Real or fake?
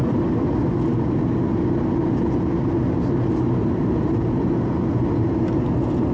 real